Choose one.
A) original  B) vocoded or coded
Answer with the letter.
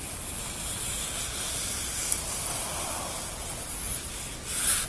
A